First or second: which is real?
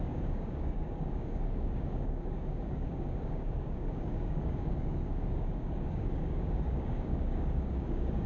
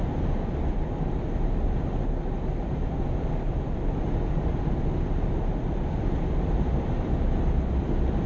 second